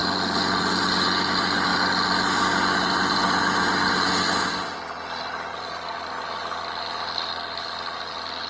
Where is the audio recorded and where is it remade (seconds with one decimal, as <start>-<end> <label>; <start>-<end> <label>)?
0.0-0.6 recorded; 0.6-1.7 remade; 1.7-6.2 recorded; 6.2-8.5 remade